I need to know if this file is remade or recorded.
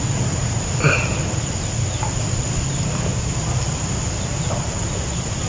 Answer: recorded